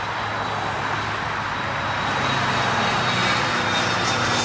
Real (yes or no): yes